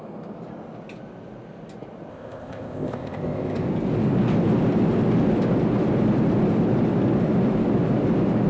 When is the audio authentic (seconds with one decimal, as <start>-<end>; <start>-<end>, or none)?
0.0-2.1; 3.7-8.5